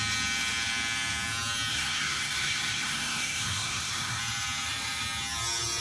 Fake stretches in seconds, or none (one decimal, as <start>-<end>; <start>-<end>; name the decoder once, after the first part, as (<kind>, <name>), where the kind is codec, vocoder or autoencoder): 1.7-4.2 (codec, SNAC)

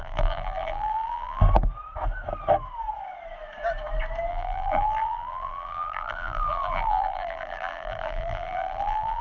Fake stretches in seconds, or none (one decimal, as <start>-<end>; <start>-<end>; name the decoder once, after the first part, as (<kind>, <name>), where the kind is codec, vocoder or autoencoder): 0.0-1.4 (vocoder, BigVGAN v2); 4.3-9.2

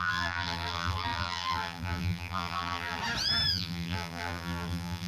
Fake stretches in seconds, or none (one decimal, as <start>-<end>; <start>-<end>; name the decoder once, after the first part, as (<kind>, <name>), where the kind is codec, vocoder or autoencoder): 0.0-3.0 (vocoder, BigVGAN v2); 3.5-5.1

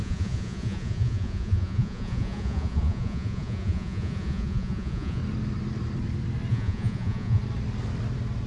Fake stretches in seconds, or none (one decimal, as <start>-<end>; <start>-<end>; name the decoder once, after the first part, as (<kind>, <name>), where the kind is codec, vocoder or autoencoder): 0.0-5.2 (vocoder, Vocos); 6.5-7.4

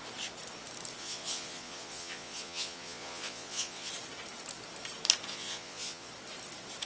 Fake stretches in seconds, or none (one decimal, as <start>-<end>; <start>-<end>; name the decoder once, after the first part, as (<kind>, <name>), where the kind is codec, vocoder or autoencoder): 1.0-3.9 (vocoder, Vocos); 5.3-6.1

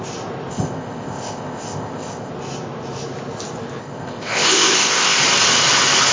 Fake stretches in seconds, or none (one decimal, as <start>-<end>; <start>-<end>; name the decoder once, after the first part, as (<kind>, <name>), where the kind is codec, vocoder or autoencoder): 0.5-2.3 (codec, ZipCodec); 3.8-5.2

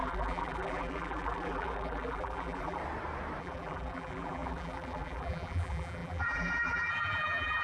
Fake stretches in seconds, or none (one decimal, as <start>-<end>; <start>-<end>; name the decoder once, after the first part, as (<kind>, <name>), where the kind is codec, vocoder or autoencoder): 0.0-2.8 (vocoder, BigVGAN v2); 3.4-7.6